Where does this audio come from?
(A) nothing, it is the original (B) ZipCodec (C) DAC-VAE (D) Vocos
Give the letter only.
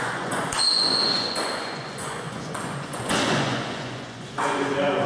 D